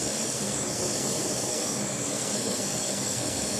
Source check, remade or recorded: remade